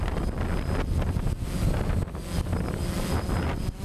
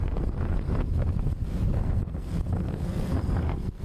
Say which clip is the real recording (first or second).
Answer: first